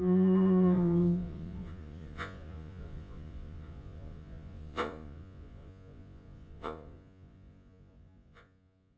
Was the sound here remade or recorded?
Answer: remade